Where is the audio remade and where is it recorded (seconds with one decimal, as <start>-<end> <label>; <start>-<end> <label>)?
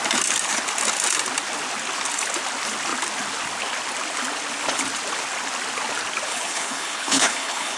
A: 0.0-6.3 recorded; 6.3-7.8 remade